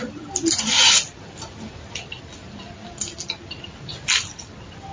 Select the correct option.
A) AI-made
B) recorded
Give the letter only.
B